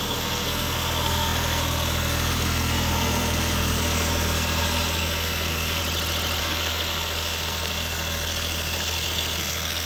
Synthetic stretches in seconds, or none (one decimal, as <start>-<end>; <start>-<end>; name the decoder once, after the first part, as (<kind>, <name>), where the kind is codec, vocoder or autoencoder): 0.0-5.8 (codec, SNAC); 6.4-9.9